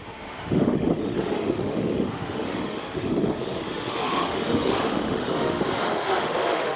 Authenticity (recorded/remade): remade